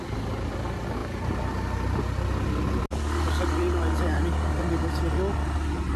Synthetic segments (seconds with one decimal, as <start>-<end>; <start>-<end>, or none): none